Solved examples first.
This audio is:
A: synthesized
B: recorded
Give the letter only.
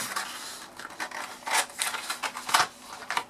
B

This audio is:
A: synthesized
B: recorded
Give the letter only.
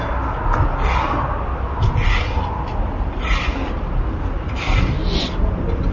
B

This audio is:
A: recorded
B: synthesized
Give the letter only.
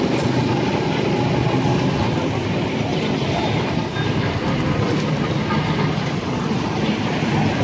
A